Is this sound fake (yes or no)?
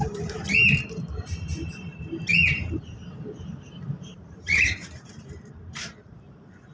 yes